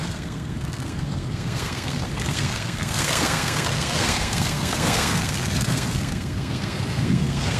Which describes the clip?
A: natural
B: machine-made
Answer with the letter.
B